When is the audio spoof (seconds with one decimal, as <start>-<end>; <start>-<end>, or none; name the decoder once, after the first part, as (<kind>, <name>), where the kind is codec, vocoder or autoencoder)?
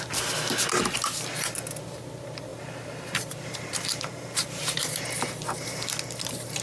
2.5-5.1 (vocoder, BigVGAN v2)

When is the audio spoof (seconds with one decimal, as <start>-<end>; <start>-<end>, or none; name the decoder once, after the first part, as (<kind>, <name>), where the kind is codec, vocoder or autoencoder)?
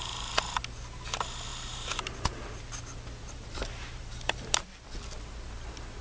1.5-2.5 (vocoder, BigVGAN v2); 3.2-4.7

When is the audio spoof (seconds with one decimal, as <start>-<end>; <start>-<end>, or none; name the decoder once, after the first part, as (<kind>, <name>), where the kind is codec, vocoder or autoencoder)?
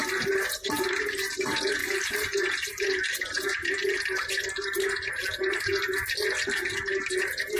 0.0-5.8 (vocoder, BigVGAN v2); 6.7-7.6